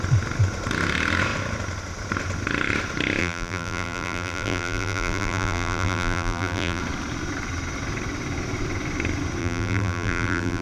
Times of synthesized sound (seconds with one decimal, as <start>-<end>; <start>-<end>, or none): 3.2-6.8; 9.4-10.6